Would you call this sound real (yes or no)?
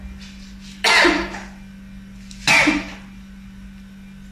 yes